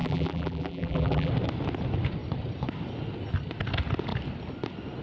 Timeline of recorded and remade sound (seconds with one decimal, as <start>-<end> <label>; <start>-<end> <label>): 0.0-1.3 remade; 1.3-5.0 recorded